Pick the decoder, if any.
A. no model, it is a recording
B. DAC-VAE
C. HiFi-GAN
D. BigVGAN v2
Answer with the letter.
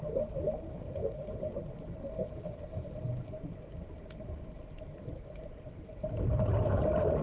A